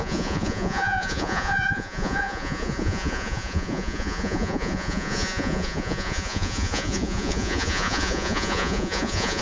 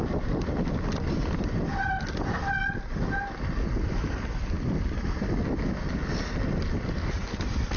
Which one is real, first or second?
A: second